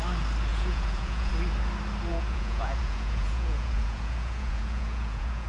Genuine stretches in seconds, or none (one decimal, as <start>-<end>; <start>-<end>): 0.0-0.5; 1.3-2.1